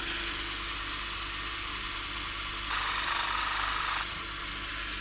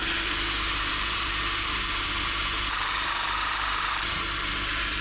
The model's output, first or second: second